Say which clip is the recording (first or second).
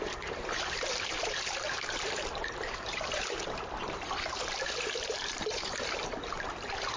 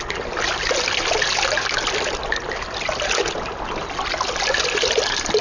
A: second